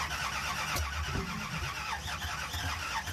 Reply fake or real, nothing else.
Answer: real